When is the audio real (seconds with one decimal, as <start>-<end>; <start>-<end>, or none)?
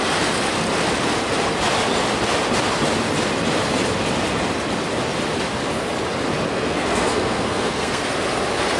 0.0-6.5; 8.1-8.8